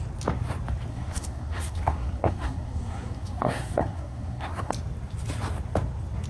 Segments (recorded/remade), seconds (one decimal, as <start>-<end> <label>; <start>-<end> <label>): 0.0-0.9 recorded; 0.9-4.7 remade; 4.7-6.3 recorded